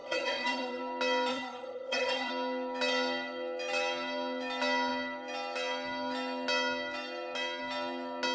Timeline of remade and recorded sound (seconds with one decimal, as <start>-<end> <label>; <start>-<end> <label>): 0.0-0.8 remade; 0.8-1.3 recorded; 1.3-2.3 remade; 2.3-8.3 recorded